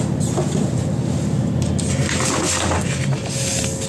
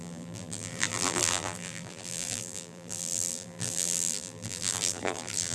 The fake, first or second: second